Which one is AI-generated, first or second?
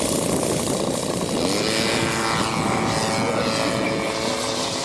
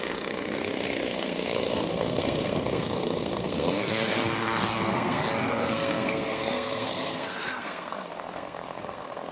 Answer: second